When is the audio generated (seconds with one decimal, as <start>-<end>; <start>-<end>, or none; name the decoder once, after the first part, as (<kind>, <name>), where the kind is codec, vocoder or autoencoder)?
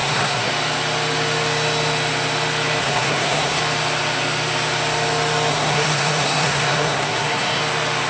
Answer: 0.0-0.5 (codec, SNAC); 2.8-3.6; 5.5-7.6